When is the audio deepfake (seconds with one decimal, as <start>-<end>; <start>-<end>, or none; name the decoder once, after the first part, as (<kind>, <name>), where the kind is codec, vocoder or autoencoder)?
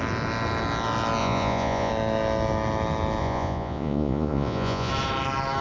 1.2-1.9 (vocoder, Vocos); 3.2-4.9